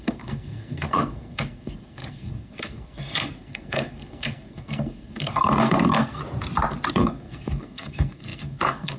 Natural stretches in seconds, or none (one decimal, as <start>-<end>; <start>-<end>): 6.2-6.9